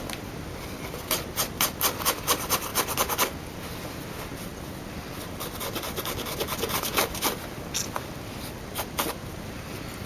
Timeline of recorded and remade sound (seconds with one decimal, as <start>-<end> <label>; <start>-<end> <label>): 0.0-9.2 recorded; 9.2-10.1 remade